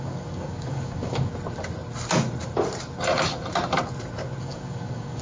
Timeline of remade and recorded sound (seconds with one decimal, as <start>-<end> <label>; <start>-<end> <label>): 0.0-1.3 remade; 1.3-4.4 recorded; 4.4-5.2 remade